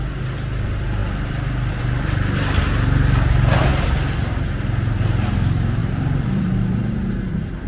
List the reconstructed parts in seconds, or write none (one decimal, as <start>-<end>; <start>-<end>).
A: 5.8-6.5